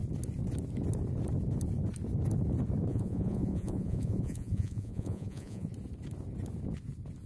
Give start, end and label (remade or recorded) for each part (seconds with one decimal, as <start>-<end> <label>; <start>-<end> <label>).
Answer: 0.0-2.9 recorded; 2.9-5.7 remade; 5.7-7.3 recorded